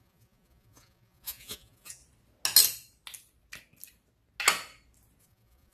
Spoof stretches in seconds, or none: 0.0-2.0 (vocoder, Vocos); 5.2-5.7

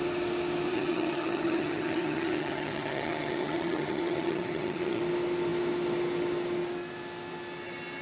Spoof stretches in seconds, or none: 0.7-5.0 (vocoder, HiFi-GAN)

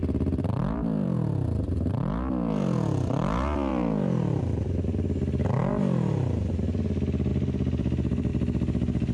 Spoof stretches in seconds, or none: 0.0-1.9 (vocoder, BigVGAN v2); 3.7-4.4; 7.3-8.3